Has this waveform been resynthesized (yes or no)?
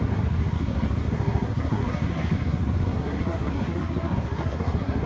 yes